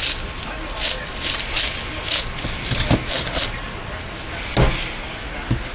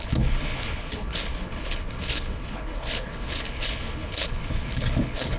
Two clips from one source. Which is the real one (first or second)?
first